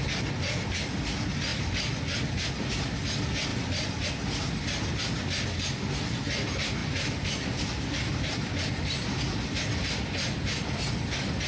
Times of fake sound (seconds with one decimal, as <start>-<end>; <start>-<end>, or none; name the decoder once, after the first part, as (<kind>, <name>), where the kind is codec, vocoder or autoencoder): none